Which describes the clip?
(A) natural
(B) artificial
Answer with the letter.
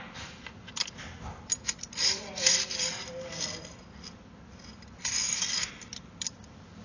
A